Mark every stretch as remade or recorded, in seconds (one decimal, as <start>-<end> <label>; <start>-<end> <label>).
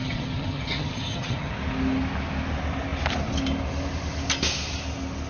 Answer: 0.0-1.5 remade; 1.5-5.3 recorded